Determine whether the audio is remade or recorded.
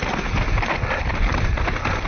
recorded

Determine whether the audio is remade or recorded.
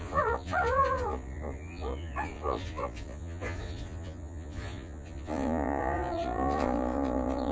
remade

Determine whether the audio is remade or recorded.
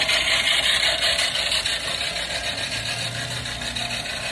recorded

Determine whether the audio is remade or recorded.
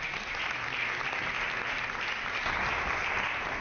recorded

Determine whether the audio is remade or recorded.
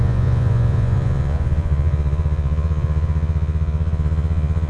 remade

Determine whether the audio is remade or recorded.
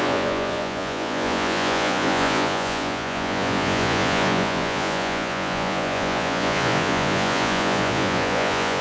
remade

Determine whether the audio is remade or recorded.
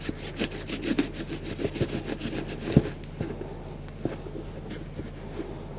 recorded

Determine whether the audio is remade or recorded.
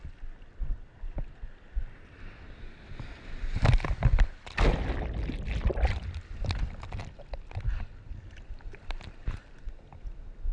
recorded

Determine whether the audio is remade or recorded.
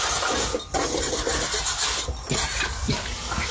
recorded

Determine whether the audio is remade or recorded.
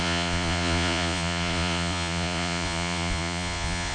remade